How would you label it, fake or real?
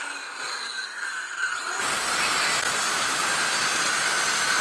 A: real